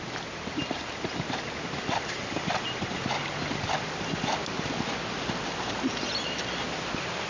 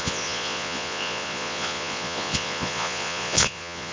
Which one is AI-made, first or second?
second